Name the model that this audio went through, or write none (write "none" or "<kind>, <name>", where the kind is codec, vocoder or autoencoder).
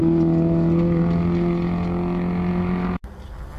none